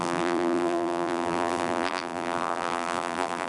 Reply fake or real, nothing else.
fake